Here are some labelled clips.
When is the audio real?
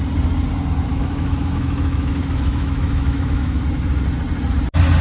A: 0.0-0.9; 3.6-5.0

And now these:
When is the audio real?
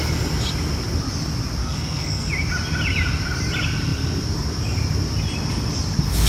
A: 0.0-1.6; 2.3-6.3